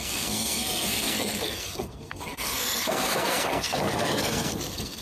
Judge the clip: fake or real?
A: fake